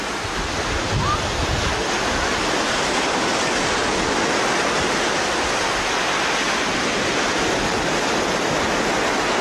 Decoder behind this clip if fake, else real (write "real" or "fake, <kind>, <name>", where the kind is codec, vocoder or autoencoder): real